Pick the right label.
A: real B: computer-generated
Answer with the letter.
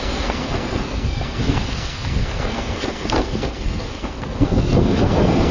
B